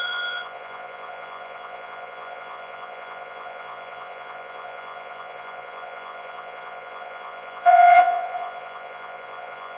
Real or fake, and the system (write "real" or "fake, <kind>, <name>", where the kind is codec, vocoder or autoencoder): fake, vocoder, Vocos